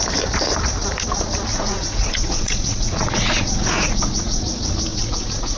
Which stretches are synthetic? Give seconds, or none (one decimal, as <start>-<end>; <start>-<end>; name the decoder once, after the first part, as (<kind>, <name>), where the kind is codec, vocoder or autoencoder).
1.5-4.4 (vocoder, Vocos); 4.9-5.6